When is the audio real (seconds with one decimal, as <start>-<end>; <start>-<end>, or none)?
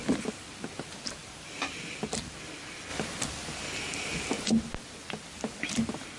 0.0-1.2; 1.8-6.2